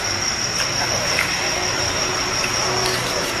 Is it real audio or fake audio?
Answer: real